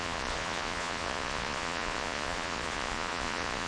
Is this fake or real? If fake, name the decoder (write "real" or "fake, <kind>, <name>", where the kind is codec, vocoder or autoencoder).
fake, vocoder, Vocos